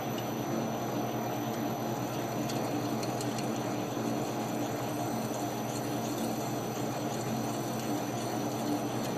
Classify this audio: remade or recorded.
recorded